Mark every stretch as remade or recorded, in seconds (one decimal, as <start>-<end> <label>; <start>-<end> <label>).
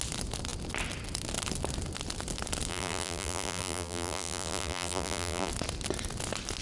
0.0-2.7 recorded; 2.7-5.5 remade; 5.5-6.6 recorded